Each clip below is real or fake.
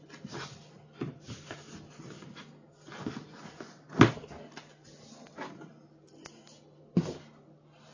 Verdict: real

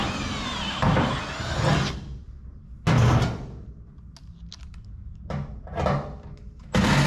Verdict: real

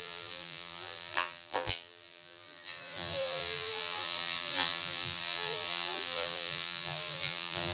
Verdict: fake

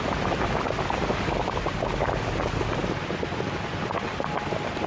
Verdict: real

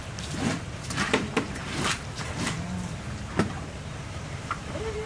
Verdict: fake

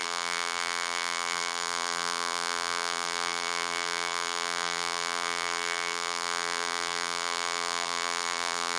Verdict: fake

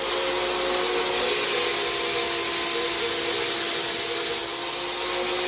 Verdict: real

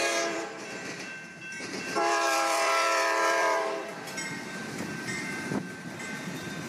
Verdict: fake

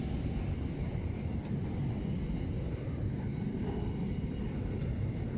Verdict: real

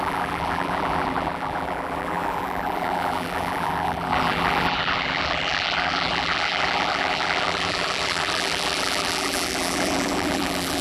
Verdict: fake